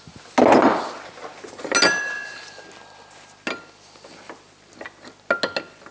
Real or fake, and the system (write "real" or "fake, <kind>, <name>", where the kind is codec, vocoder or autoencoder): real